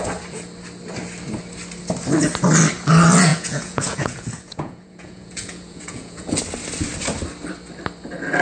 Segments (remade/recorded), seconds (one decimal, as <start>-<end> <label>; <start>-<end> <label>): 0.0-3.3 recorded; 3.3-6.4 remade; 6.4-8.4 recorded

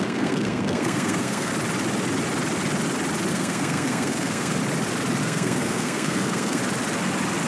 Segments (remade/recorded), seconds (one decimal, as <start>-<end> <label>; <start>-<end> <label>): 0.0-1.5 remade; 1.5-3.3 recorded; 3.3-4.6 remade; 4.6-5.2 recorded; 5.2-6.6 remade; 6.6-7.5 recorded

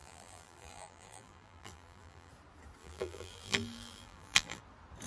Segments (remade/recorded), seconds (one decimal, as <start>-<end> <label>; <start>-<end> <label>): 0.0-2.3 remade; 2.3-2.8 recorded; 2.8-4.6 remade; 4.6-5.1 recorded

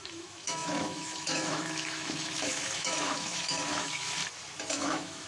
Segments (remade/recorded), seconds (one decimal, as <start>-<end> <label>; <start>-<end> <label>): 0.0-4.2 remade; 4.2-4.7 recorded; 4.7-5.3 remade

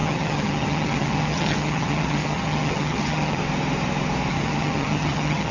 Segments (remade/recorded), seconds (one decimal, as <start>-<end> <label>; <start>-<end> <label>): 0.0-3.4 remade; 3.4-4.3 recorded; 4.3-5.5 remade

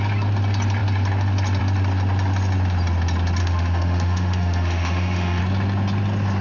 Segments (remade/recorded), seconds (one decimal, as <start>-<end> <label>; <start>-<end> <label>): 0.0-3.4 recorded; 3.4-5.4 remade; 5.4-6.4 recorded

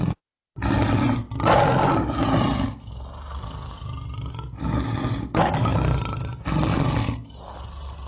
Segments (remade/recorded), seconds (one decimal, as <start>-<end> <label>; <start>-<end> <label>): 0.0-8.1 recorded